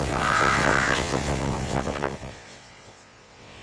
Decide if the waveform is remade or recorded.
remade